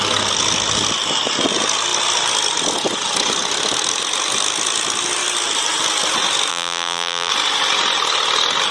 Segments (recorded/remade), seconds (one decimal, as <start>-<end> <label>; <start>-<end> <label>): 0.0-6.5 recorded; 6.5-7.3 remade; 7.3-8.7 recorded